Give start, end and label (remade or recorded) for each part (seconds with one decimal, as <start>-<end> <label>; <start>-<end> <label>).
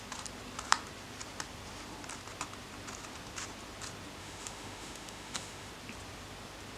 0.0-4.2 recorded; 4.2-5.7 remade; 5.7-6.8 recorded